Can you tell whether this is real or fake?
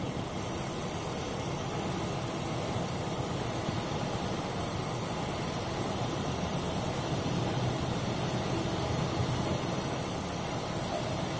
real